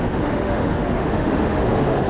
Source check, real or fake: fake